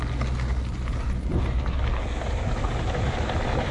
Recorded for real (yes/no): yes